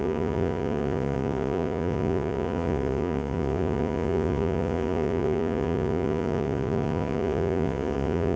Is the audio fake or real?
fake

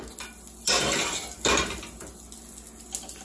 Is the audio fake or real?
real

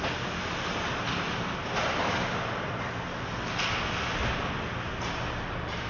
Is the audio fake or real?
real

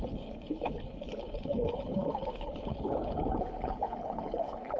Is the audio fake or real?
fake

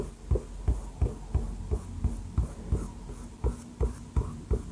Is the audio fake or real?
real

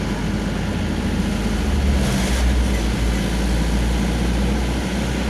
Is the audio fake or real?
real